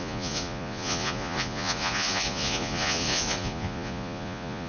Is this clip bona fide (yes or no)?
no